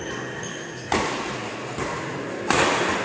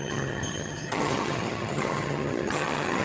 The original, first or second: first